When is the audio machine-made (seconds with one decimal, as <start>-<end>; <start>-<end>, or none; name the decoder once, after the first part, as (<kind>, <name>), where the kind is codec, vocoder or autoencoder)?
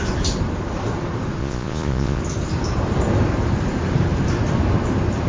1.4-2.2 (vocoder, Vocos)